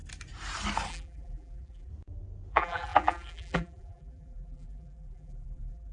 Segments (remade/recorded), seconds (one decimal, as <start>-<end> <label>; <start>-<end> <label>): 0.0-0.9 recorded; 0.9-1.9 remade; 1.9-2.5 recorded; 2.5-5.9 remade